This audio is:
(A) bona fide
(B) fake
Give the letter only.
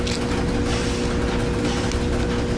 A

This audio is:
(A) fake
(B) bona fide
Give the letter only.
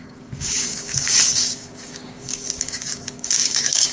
A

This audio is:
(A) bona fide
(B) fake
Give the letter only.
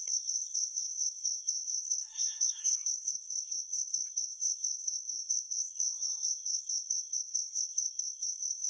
B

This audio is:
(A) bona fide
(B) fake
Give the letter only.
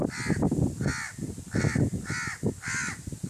A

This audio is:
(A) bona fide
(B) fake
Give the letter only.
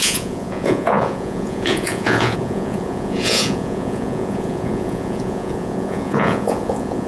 B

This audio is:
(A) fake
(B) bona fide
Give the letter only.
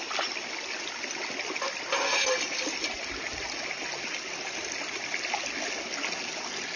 B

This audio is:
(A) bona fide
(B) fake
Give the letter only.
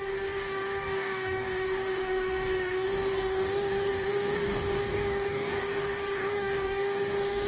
B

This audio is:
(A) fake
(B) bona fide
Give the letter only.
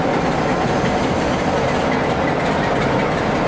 B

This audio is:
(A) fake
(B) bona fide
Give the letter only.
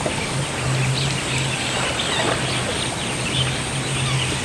B